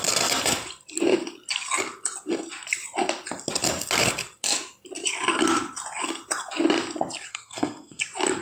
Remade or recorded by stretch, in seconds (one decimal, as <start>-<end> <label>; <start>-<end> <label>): 0.0-7.3 recorded; 7.3-8.0 remade; 8.0-8.4 recorded